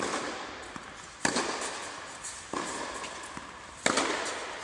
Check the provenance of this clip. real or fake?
real